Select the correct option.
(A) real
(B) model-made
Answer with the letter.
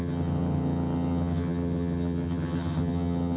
B